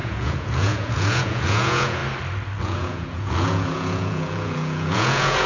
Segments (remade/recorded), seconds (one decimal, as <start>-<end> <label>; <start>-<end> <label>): 0.0-2.0 remade; 2.0-2.6 recorded; 2.6-5.5 remade